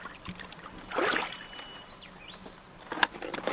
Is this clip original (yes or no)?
yes